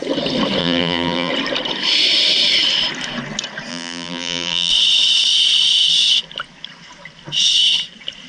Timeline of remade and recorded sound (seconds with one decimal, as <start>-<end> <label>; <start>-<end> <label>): 0.0-0.6 recorded; 0.6-1.3 remade; 1.3-3.7 recorded; 3.7-4.7 remade; 4.7-8.3 recorded